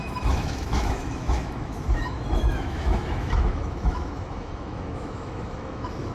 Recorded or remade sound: remade